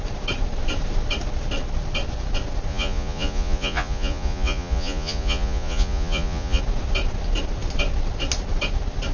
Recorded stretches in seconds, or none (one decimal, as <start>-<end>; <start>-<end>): 0.0-2.7; 6.6-9.1